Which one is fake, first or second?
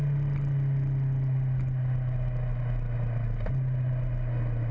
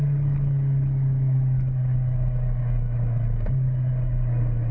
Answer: second